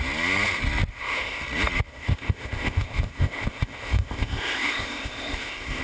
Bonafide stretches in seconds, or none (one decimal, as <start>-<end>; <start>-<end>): 0.0-0.9; 1.4-1.9